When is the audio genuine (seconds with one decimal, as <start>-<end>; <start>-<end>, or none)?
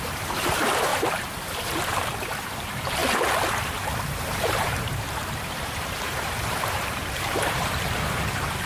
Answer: 3.0-4.2